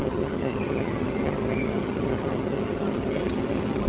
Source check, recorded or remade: remade